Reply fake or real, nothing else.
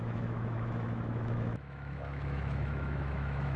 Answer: fake